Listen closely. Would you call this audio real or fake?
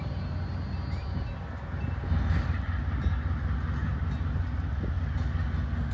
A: real